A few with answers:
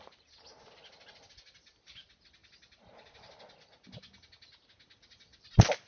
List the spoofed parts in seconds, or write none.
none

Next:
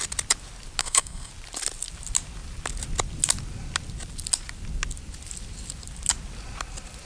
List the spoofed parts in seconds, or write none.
0.8-1.3 (codec, SNAC)